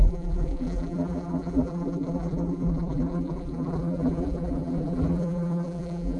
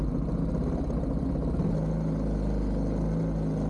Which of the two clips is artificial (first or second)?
first